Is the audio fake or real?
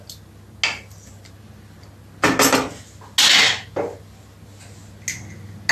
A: real